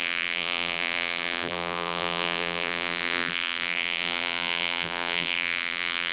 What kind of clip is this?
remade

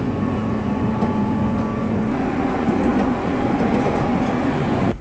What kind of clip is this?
remade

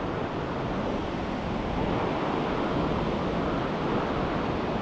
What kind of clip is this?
recorded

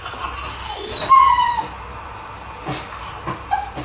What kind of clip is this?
recorded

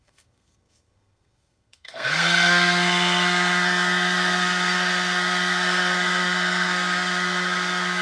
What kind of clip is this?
remade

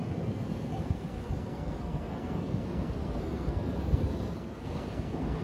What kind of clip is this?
remade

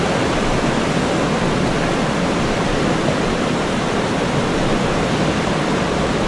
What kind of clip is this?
recorded